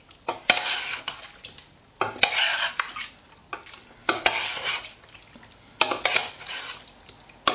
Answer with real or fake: real